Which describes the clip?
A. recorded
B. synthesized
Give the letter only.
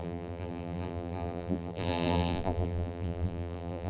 B